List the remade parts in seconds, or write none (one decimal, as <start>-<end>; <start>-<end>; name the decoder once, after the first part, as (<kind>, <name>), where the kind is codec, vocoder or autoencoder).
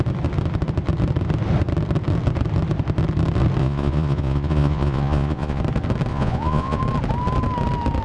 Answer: 3.6-5.6 (vocoder, Vocos); 6.1-6.8